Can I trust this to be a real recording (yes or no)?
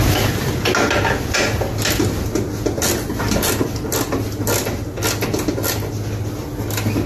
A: yes